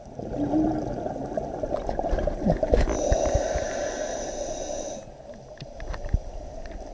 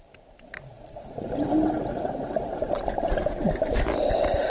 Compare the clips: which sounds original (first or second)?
first